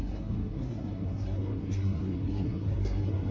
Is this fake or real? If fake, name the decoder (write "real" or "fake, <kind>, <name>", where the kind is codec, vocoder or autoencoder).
fake, codec, SNAC